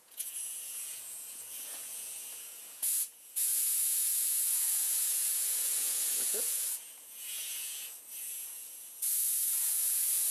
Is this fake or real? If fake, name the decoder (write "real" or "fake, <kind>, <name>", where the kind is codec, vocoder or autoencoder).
fake, vocoder, Vocos